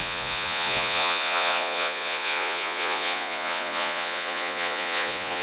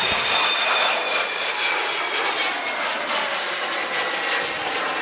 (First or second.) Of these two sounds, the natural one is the second